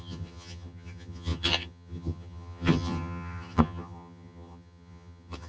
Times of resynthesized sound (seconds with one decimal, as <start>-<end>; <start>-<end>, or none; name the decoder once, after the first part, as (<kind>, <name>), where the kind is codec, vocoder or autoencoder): 0.0-5.5 (vocoder, HiFi-GAN)